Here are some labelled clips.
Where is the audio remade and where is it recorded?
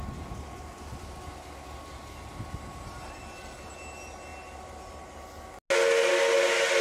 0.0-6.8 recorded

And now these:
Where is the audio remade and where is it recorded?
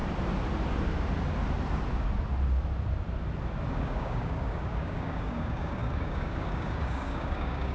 0.0-3.7 recorded; 3.7-7.7 remade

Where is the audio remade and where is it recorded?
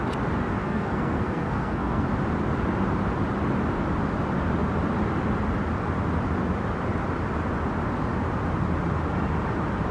0.0-0.6 recorded; 0.6-2.1 remade; 2.1-9.9 recorded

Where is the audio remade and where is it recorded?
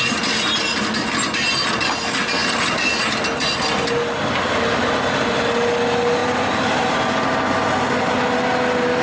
0.0-9.0 recorded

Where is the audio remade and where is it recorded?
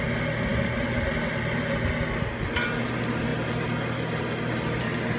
0.0-5.2 recorded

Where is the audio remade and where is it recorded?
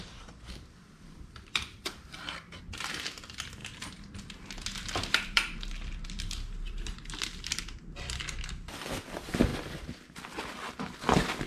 0.0-11.5 recorded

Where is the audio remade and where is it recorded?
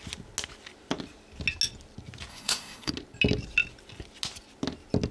0.0-2.3 recorded; 2.3-2.9 remade; 2.9-5.1 recorded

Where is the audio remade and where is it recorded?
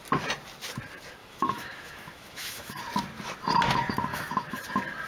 0.0-1.2 recorded; 1.2-2.8 remade; 2.8-4.1 recorded; 4.1-4.6 remade; 4.6-5.1 recorded